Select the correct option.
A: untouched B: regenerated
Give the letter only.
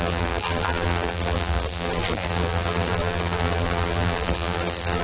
B